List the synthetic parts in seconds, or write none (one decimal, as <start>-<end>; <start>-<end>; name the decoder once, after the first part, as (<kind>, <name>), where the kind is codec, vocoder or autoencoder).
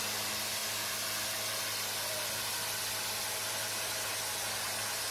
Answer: none